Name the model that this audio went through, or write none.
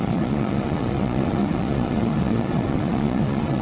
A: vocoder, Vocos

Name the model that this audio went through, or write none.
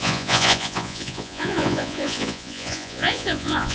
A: vocoder, Vocos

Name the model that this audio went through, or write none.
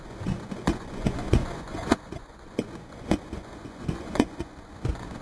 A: vocoder, Vocos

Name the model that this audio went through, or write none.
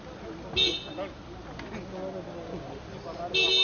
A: none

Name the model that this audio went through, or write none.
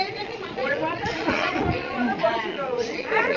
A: vocoder, Vocos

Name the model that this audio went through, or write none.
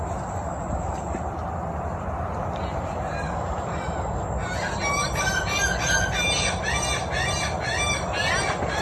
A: none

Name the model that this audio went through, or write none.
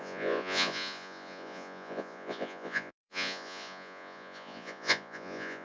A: vocoder, Vocos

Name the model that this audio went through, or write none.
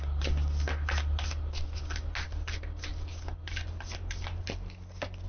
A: none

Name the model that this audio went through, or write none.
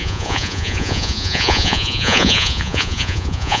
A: vocoder, Vocos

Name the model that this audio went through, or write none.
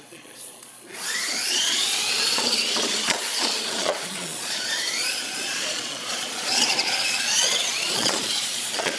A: vocoder, Vocos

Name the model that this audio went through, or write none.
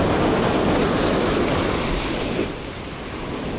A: none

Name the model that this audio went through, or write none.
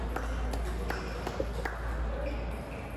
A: none